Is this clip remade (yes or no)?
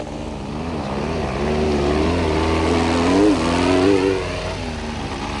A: no